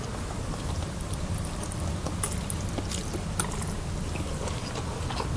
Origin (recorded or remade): recorded